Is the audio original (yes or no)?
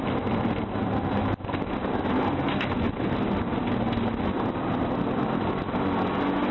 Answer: yes